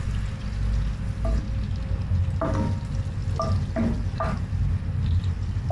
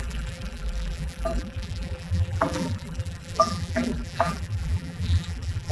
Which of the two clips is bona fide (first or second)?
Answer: first